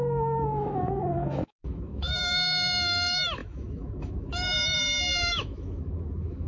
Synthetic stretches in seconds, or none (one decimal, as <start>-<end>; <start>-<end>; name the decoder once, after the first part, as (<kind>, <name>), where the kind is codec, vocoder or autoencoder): 0.0-6.5 (autoencoder, DAC-VAE)